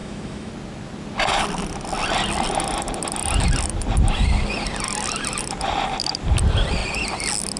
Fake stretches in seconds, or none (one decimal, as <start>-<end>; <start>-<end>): 0.0-0.5

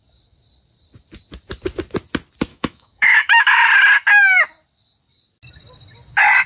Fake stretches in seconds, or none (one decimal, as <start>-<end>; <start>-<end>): 2.5-3.7

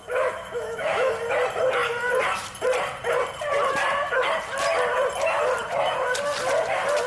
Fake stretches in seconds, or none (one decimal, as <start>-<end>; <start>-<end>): 0.0-1.1

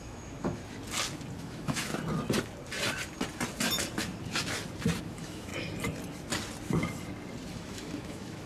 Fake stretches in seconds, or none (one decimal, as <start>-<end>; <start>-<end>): 0.0-0.6; 1.4-1.9; 5.0-5.5; 7.5-8.5